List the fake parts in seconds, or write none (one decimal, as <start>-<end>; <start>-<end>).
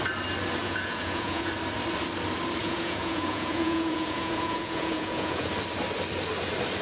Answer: 0.6-1.5; 2.6-5.5